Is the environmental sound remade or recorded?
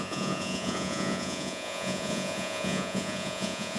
remade